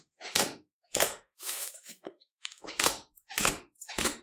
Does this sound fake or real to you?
fake